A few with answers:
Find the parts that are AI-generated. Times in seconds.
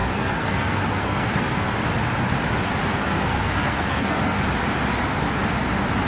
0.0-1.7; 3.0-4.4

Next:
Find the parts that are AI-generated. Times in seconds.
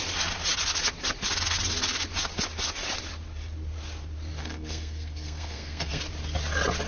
4.4-6.0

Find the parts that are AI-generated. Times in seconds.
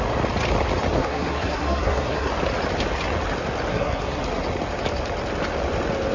1.0-2.3; 3.7-4.2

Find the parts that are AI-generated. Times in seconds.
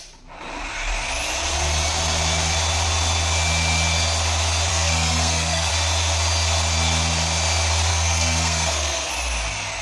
4.7-5.7; 7.9-9.1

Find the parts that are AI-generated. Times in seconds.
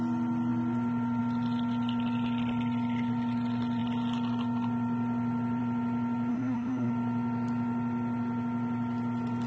6.3-6.9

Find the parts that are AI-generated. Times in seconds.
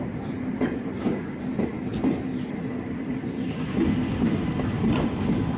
none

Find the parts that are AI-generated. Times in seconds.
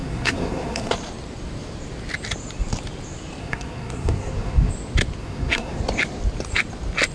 0.0-0.9; 3.4-4.7; 5.2-5.8